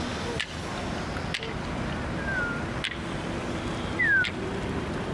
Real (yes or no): yes